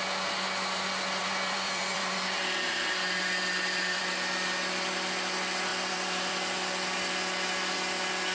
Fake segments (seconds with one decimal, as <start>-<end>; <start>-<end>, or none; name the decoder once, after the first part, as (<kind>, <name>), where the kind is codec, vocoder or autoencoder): 1.2-4.0 (vocoder, BigVGAN v2); 5.7-6.3